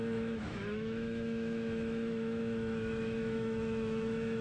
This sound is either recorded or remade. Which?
remade